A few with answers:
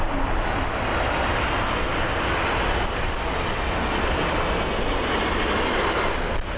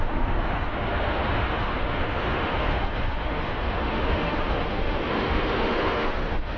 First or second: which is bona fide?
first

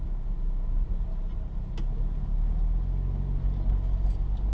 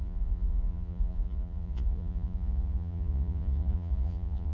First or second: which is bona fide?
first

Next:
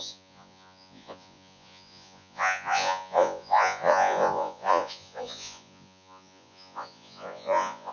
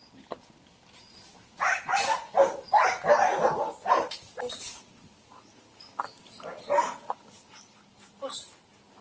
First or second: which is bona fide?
second